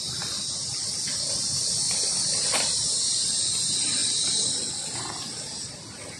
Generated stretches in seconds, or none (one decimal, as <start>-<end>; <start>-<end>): none